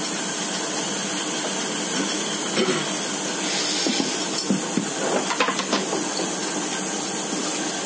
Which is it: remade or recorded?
recorded